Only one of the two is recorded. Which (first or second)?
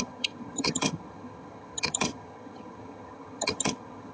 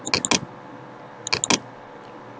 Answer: second